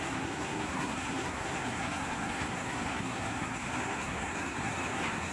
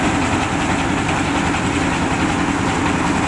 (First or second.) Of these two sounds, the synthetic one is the first